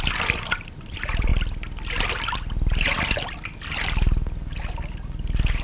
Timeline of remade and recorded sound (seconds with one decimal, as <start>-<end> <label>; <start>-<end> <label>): 0.0-1.3 remade; 1.3-4.6 recorded; 4.6-5.6 remade